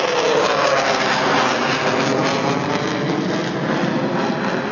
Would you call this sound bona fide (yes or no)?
yes